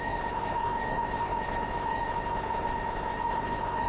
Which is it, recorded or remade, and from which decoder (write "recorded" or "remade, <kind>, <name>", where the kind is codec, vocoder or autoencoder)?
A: remade, codec, SNAC